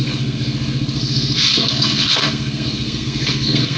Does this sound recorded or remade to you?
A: remade